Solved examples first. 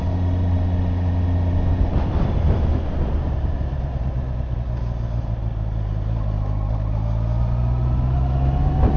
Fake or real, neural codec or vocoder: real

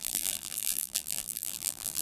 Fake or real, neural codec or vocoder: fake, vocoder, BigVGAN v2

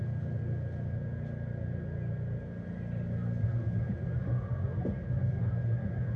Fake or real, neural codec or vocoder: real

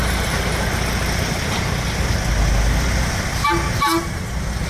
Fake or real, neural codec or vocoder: real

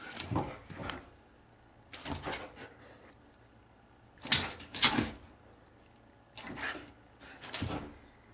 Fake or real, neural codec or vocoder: real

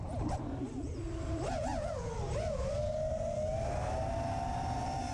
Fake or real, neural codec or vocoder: real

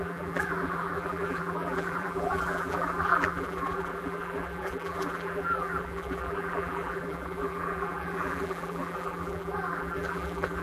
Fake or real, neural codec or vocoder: fake, vocoder, BigVGAN v2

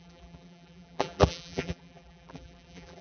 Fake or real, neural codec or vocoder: fake, vocoder, BigVGAN v2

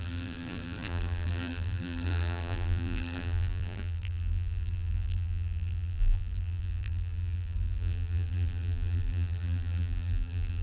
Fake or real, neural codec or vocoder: fake, vocoder, BigVGAN v2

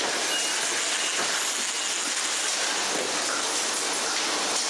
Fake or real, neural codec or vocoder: real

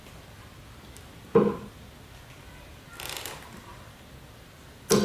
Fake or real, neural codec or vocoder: real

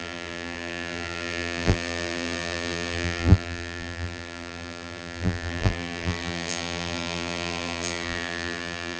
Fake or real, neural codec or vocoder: fake, vocoder, BigVGAN v2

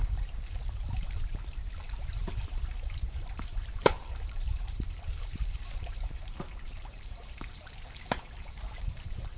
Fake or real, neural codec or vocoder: fake, vocoder, BigVGAN v2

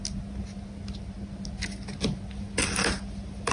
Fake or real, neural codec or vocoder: real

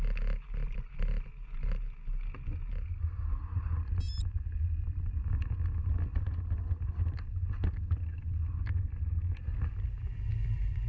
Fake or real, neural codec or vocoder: real